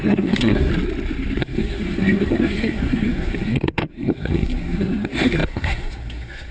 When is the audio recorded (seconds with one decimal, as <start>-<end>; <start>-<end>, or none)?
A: 0.7-1.4